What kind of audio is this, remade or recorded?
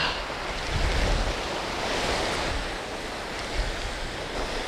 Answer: recorded